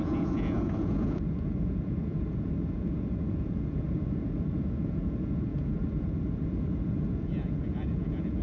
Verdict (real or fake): fake